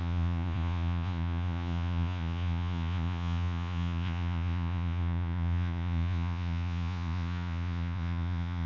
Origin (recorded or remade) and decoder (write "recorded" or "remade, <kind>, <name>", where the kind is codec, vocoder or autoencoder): remade, vocoder, Vocos